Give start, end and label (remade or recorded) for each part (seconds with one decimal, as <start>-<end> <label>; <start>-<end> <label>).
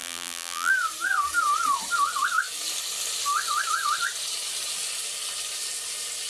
0.0-0.7 remade; 0.7-6.3 recorded